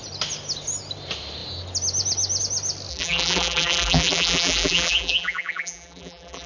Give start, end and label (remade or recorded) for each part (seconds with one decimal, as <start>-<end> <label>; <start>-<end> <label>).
0.0-2.9 recorded; 2.9-6.5 remade